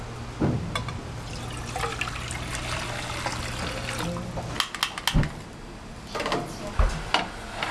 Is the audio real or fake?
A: real